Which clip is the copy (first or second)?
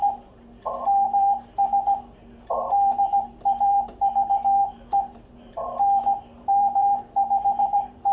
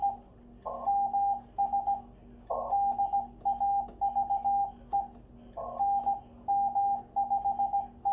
first